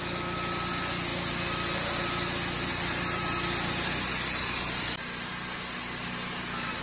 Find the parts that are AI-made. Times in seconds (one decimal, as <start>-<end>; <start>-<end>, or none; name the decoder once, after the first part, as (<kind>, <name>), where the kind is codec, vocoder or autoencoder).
none